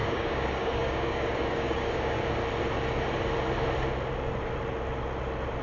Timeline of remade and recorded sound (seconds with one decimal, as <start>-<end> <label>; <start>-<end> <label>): 0.0-2.2 remade; 2.2-5.6 recorded